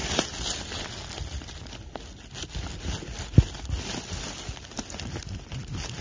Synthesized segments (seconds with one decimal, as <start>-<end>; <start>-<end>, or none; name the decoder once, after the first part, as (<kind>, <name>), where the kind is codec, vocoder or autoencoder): none